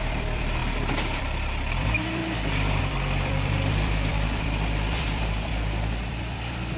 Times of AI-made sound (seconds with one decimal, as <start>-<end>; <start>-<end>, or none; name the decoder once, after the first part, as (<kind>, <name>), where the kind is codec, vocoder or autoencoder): 0.0-0.6 (vocoder, BigVGAN v2); 1.2-2.2; 2.8-6.8